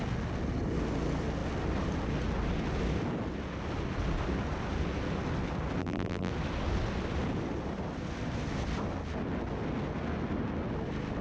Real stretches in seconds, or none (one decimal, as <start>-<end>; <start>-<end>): 0.0-5.8; 6.3-11.2